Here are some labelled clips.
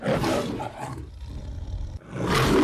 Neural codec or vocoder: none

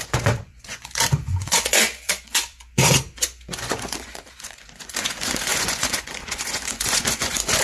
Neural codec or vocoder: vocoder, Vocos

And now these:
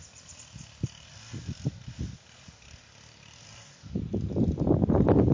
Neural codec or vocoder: vocoder, BigVGAN v2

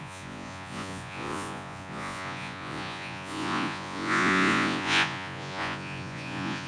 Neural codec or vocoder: vocoder, Vocos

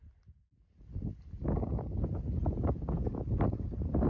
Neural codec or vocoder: none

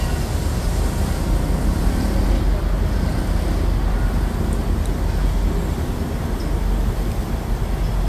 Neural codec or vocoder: none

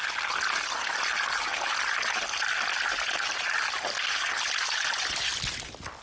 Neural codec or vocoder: none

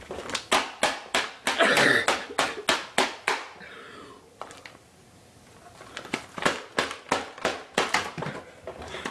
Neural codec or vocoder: none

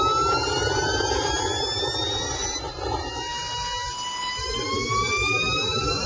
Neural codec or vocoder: none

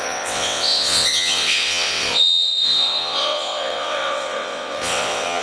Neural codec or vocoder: vocoder, WaveNeXt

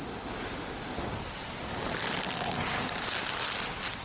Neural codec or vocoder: none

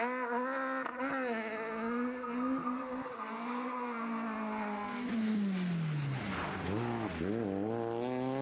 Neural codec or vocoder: none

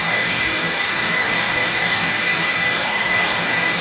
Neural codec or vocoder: codec, DAC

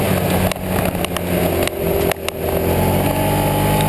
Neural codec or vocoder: none